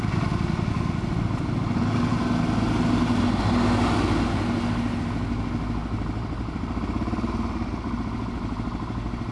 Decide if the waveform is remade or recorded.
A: recorded